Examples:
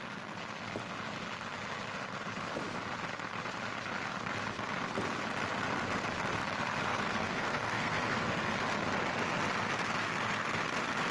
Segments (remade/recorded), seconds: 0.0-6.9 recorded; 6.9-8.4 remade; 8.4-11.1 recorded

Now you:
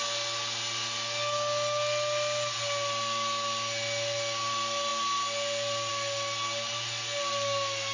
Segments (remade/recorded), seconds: 0.0-7.9 recorded

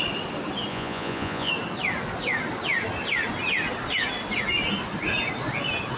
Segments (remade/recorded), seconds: 0.0-0.7 recorded; 0.7-1.5 remade; 1.5-6.0 recorded

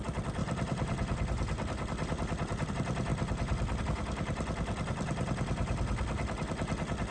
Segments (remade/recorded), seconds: 0.0-7.1 recorded

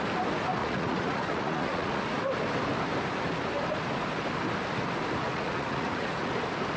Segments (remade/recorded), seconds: 0.0-0.6 recorded; 0.6-2.0 remade; 2.0-5.2 recorded; 5.2-6.3 remade; 6.3-6.8 recorded

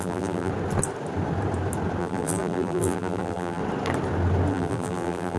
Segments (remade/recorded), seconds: 0.0-0.5 remade; 0.5-2.0 recorded; 2.0-3.6 remade; 3.6-4.5 recorded; 4.5-5.4 remade

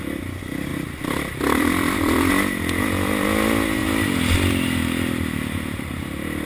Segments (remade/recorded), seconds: 0.0-0.7 recorded; 0.7-2.3 remade; 2.3-6.5 recorded

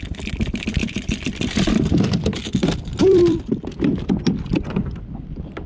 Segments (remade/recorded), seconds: 0.0-5.7 remade